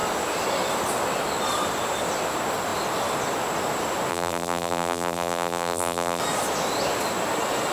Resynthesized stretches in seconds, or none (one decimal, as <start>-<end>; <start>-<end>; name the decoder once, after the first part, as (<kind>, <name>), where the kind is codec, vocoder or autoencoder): 4.1-6.2 (vocoder, BigVGAN v2)